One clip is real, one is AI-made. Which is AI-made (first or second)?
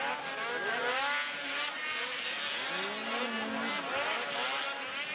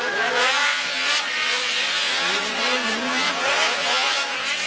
second